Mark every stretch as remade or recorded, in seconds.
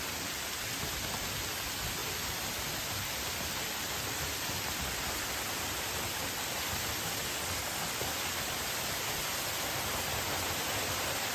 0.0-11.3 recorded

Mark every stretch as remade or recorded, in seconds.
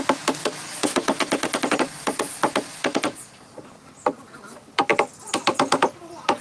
0.0-0.4 recorded; 0.4-3.6 remade; 3.6-6.4 recorded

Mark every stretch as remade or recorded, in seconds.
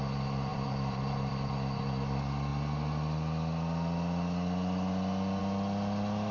0.0-0.5 recorded; 0.5-1.3 remade; 1.3-6.3 recorded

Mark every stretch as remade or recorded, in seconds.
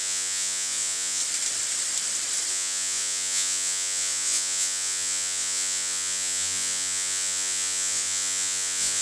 0.0-1.2 remade; 1.2-2.5 recorded; 2.5-9.0 remade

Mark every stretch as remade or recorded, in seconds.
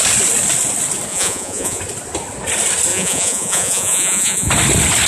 0.0-1.1 recorded; 1.1-1.8 remade; 1.8-2.9 recorded; 2.9-4.5 remade; 4.5-5.1 recorded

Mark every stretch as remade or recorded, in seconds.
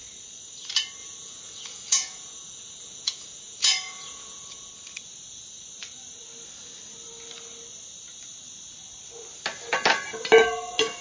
0.0-1.0 recorded; 1.0-4.7 remade; 4.7-11.0 recorded